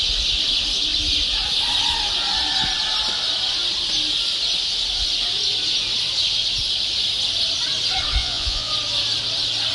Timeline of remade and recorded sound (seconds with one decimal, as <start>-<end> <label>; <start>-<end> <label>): 0.0-8.2 recorded; 8.2-8.7 remade; 8.7-9.7 recorded